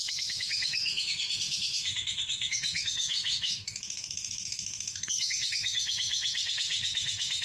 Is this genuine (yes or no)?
no